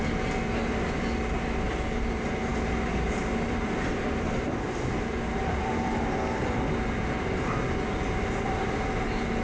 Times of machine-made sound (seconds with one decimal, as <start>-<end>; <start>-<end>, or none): 2.5-6.1